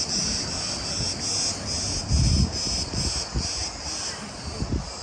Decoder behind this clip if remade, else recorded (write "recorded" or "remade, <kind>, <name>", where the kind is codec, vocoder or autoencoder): recorded